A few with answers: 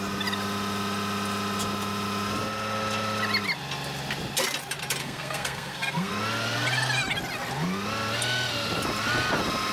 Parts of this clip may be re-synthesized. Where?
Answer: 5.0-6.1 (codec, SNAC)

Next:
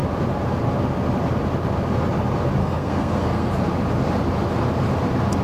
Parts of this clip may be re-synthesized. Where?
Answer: 2.6-3.5 (codec, SNAC)

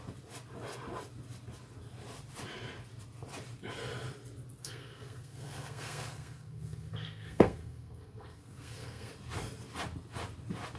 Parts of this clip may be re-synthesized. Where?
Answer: 4.6-9.1 (codec, SNAC)

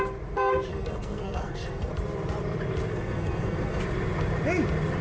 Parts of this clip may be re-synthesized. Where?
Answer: 0.7-1.9 (codec, SNAC); 2.9-3.8

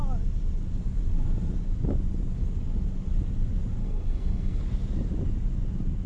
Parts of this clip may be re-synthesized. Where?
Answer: 3.8-4.6 (codec, SNAC)